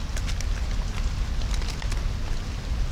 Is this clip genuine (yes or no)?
yes